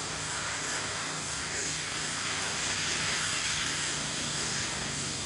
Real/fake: fake